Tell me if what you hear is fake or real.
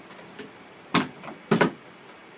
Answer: real